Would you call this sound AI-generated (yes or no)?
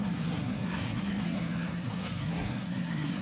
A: yes